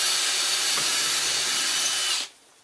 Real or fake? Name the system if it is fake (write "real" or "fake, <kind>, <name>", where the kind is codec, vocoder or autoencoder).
real